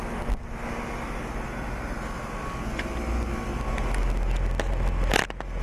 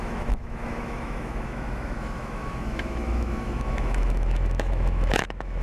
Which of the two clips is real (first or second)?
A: first